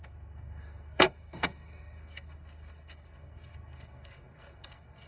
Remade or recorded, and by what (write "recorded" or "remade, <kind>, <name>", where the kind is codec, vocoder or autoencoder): remade, codec, SNAC